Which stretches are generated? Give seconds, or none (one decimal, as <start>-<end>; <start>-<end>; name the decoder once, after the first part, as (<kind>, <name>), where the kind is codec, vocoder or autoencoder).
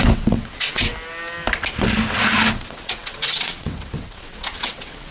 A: 0.0-0.9 (vocoder, WaveNeXt); 2.5-5.1